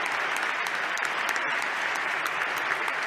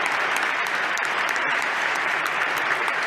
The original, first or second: first